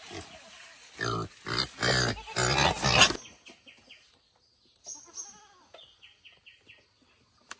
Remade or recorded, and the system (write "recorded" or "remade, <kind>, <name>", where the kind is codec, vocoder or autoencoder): recorded